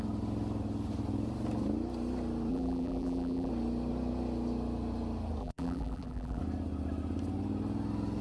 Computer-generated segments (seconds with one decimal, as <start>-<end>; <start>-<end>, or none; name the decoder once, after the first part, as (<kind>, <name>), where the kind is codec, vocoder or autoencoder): 2.5-3.5 (vocoder, BigVGAN v2); 5.4-6.4